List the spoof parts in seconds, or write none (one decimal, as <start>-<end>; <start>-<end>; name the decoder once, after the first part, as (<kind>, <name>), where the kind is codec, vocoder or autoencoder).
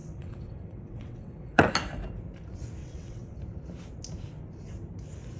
0.0-1.7 (vocoder, WaveNeXt); 2.8-3.4